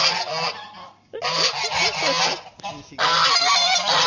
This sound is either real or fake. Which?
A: real